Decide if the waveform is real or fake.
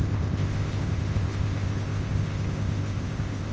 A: fake